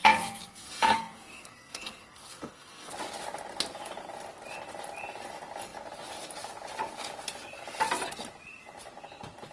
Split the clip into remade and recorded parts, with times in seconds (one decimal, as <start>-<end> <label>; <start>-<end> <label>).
0.0-2.9 remade; 2.9-9.5 recorded

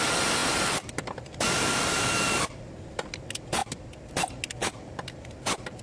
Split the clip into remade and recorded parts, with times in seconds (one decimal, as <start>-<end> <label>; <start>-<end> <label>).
0.0-0.4 recorded; 0.4-3.1 remade; 3.1-3.6 recorded; 3.6-4.1 remade; 4.1-5.8 recorded

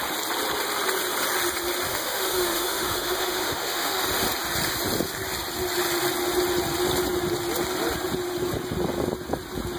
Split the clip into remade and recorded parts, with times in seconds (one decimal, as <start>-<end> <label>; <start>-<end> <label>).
0.0-1.9 recorded; 1.9-4.0 remade; 4.0-9.8 recorded

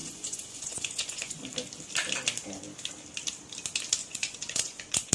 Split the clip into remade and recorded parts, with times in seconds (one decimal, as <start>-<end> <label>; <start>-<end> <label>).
0.0-1.4 remade; 1.4-4.0 recorded; 4.0-5.1 remade

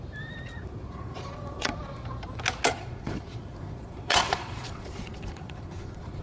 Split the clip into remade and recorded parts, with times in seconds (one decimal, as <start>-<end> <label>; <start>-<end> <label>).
0.0-0.6 recorded; 0.6-1.8 remade; 1.8-2.7 recorded; 2.7-6.2 remade

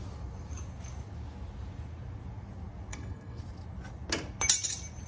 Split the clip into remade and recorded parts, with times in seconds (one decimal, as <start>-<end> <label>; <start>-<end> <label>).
0.0-2.9 recorded; 2.9-3.4 remade; 3.4-5.1 recorded

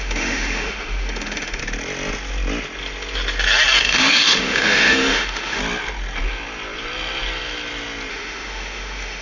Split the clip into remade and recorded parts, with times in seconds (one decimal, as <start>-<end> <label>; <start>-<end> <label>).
0.0-1.6 remade; 1.6-3.8 recorded; 3.8-5.6 remade; 5.6-8.1 recorded; 8.1-9.2 remade

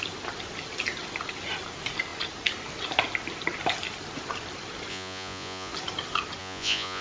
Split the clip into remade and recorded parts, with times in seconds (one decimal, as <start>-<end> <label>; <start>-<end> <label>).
0.0-4.9 recorded; 4.9-5.7 remade; 5.7-6.4 recorded; 6.4-7.0 remade